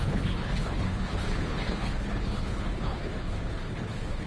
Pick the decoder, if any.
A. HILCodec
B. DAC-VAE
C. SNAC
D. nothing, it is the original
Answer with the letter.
A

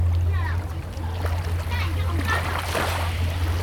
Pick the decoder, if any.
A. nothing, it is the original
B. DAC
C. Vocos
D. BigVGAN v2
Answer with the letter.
A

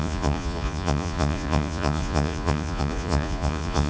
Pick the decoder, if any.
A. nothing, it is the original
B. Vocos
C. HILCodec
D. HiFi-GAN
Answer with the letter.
B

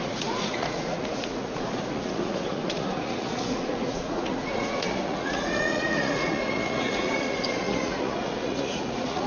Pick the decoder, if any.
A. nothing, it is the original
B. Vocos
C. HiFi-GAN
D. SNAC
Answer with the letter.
B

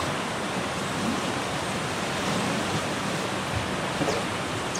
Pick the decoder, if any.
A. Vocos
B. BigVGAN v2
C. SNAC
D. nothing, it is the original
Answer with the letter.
D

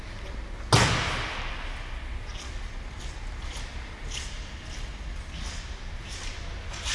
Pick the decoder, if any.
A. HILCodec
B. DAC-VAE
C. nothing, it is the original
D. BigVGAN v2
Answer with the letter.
C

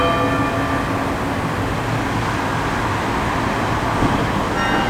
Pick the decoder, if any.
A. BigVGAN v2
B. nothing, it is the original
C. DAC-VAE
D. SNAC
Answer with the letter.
B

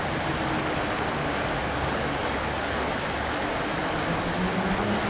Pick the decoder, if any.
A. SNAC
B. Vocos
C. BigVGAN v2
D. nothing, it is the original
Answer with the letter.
D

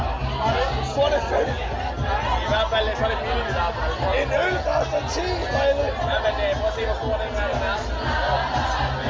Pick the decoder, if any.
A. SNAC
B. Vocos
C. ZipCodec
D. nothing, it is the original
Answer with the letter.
D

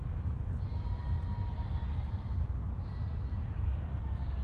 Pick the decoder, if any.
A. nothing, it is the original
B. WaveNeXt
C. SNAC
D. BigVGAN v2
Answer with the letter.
A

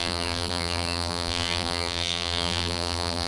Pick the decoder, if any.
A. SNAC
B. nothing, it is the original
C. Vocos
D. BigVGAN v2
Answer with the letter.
D